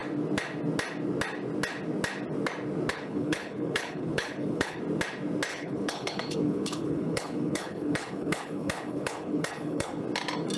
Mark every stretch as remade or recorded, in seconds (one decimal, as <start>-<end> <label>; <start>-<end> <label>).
0.0-2.9 recorded; 2.9-4.8 remade; 4.8-5.5 recorded; 5.5-10.0 remade; 10.0-10.6 recorded